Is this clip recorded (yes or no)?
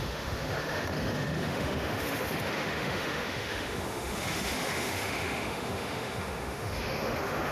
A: no